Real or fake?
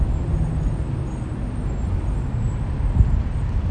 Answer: real